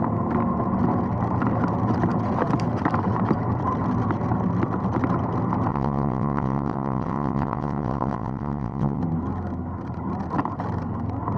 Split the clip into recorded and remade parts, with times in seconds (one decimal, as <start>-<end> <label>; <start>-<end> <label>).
0.0-5.7 recorded; 5.7-9.0 remade; 9.0-11.4 recorded